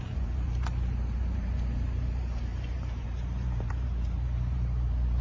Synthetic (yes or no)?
yes